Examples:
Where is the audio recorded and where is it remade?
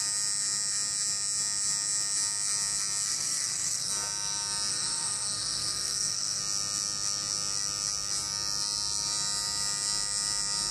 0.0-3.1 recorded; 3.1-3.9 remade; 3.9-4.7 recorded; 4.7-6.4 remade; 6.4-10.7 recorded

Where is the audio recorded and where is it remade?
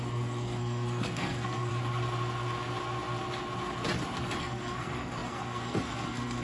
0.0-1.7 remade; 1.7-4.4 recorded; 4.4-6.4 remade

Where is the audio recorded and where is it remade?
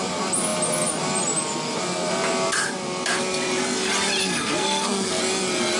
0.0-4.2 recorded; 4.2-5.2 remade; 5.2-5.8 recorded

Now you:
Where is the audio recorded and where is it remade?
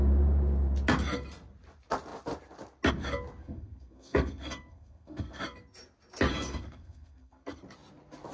0.0-3.4 recorded; 3.4-5.4 remade; 5.4-6.3 recorded; 6.3-7.6 remade; 7.6-8.3 recorded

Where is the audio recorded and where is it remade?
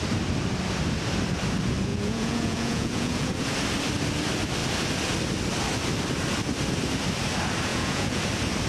0.0-1.9 recorded; 1.9-3.3 remade; 3.3-7.7 recorded; 7.7-8.2 remade; 8.2-8.7 recorded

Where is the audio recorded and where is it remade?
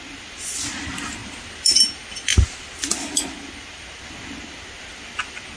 0.0-5.6 recorded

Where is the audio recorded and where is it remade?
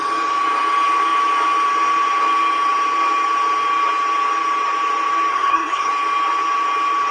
0.0-5.3 recorded; 5.3-5.9 remade; 5.9-7.1 recorded